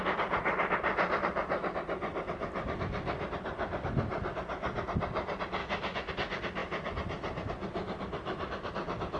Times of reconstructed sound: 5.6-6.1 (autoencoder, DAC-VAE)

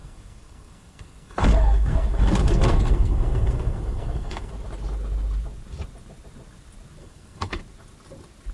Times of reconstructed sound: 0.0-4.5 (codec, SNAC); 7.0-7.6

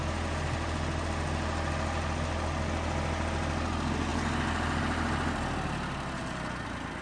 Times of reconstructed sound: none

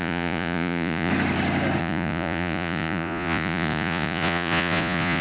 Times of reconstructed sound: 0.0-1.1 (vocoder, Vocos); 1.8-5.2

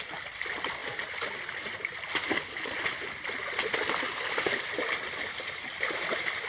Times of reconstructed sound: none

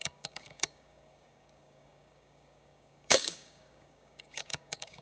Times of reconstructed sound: 0.0-5.0 (codec, DAC)

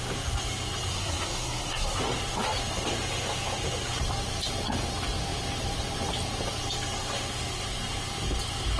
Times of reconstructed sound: 0.9-2.0 (codec, SNAC)